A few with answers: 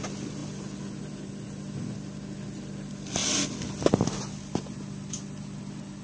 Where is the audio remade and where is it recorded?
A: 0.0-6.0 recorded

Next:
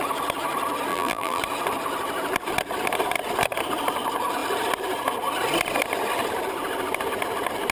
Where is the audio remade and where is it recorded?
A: 0.0-0.9 recorded; 0.9-1.4 remade; 1.4-7.7 recorded

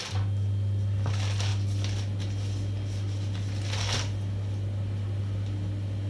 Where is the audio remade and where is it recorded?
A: 0.0-6.1 recorded

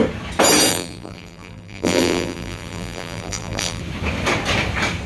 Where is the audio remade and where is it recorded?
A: 0.0-0.7 recorded; 0.7-3.8 remade; 3.8-5.1 recorded

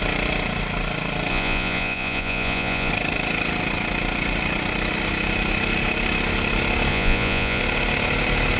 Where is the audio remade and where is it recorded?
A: 0.0-1.3 recorded; 1.3-2.9 remade; 2.9-6.9 recorded; 6.9-7.6 remade; 7.6-8.6 recorded

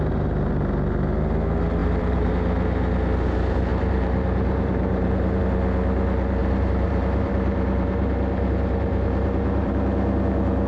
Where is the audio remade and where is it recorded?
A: 0.0-1.8 recorded; 1.8-2.3 remade; 2.3-3.7 recorded; 3.7-5.4 remade; 5.4-6.4 recorded; 6.4-9.7 remade; 9.7-10.7 recorded